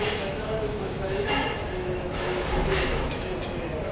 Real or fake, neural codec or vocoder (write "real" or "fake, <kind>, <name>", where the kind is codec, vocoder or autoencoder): fake, autoencoder, DAC-VAE